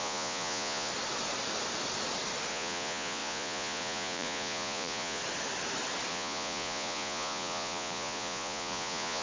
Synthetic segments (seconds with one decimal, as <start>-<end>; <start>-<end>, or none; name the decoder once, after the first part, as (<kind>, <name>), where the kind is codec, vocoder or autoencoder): 0.0-0.9 (vocoder, Vocos); 2.5-5.2; 6.1-9.2

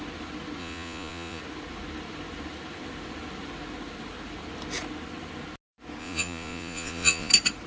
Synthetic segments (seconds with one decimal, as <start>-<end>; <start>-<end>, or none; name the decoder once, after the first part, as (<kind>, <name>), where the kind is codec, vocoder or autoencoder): 0.6-1.4 (vocoder, Vocos); 6.0-7.3

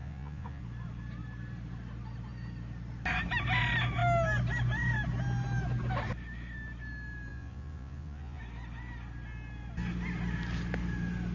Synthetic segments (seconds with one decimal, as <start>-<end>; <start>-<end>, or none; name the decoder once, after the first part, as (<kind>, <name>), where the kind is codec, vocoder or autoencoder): 0.0-0.6 (vocoder, Vocos); 7.3-8.4

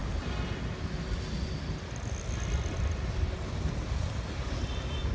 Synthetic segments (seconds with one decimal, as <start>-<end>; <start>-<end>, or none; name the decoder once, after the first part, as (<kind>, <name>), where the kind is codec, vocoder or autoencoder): none

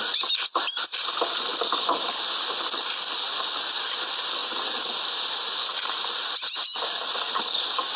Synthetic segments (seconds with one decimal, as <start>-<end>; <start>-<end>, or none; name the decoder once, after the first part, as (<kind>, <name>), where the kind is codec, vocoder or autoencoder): none

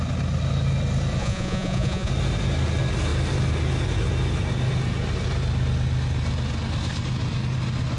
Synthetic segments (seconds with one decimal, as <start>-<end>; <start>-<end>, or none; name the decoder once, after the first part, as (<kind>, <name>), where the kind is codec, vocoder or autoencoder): 1.2-2.1 (vocoder, Vocos)

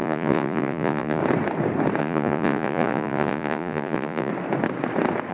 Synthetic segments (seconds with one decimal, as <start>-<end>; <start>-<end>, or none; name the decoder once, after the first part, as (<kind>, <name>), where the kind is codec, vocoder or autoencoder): 0.0-1.2 (vocoder, Vocos); 2.0-4.3

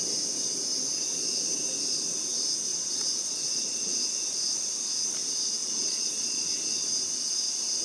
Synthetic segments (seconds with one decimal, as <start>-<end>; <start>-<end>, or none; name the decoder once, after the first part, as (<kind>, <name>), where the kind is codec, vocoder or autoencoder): 2.7-4.0 (vocoder, Vocos); 5.6-6.4